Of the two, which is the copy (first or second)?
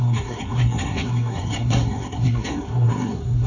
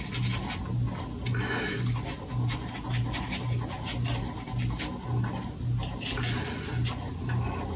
first